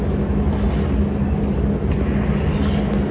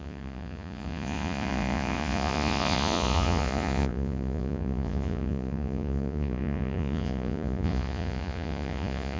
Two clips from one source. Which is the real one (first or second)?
first